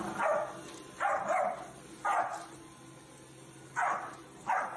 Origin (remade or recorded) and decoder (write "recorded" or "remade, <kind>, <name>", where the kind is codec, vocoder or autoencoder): recorded